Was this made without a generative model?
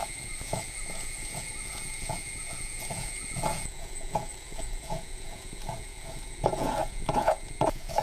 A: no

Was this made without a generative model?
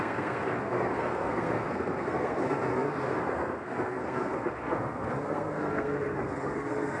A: no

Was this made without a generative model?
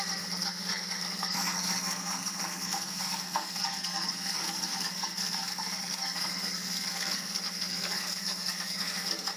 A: no